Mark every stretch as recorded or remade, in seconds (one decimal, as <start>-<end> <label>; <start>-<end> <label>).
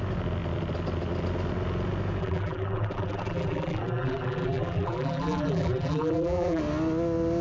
0.0-2.2 recorded; 2.2-6.6 remade; 6.6-7.4 recorded